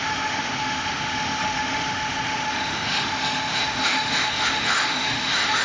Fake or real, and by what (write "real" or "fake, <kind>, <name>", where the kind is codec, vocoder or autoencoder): fake, autoencoder, DAC-VAE